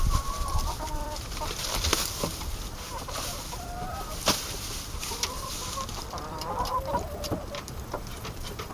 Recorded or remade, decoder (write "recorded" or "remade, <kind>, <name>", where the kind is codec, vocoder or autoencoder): remade, vocoder, BigVGAN v2